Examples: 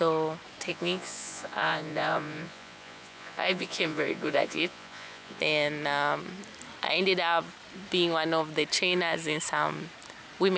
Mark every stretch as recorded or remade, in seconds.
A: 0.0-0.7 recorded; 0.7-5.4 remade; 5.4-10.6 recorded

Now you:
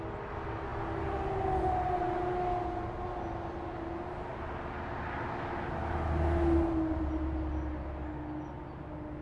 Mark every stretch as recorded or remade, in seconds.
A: 0.0-9.2 recorded

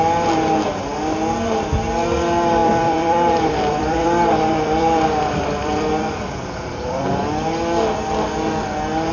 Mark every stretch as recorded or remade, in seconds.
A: 0.0-2.6 recorded; 2.6-7.2 remade; 7.2-9.1 recorded

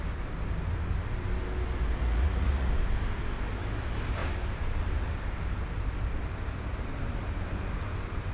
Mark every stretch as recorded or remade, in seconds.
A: 0.0-2.0 recorded; 2.0-2.7 remade; 2.7-8.3 recorded

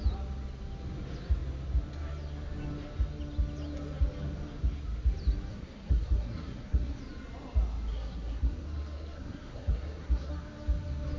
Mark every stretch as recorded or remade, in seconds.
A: 0.0-5.5 recorded; 5.5-7.0 remade; 7.0-7.9 recorded; 7.9-10.3 remade; 10.3-11.2 recorded

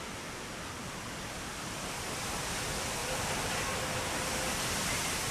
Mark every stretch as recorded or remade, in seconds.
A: 0.0-5.3 recorded

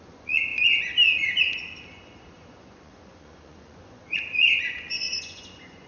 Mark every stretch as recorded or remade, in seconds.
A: 0.0-5.9 remade

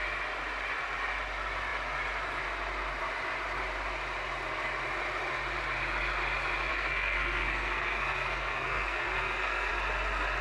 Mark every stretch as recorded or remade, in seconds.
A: 0.0-6.7 recorded; 6.7-9.7 remade; 9.7-10.4 recorded